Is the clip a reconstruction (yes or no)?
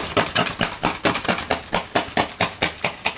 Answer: no